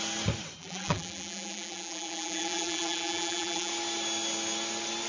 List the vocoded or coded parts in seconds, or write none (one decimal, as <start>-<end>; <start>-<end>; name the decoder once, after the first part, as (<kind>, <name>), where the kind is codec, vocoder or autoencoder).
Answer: 0.6-3.7 (vocoder, BigVGAN v2)